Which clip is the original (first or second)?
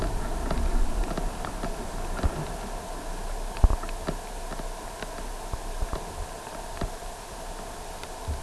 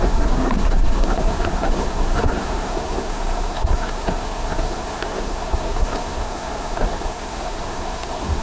first